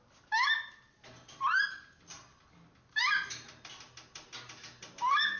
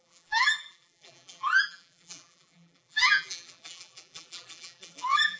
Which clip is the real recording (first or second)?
first